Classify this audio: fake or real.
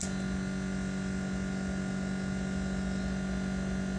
real